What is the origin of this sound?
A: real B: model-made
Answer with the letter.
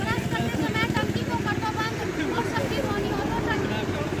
A